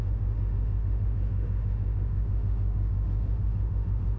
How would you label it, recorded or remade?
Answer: remade